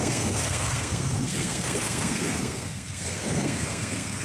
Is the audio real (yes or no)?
no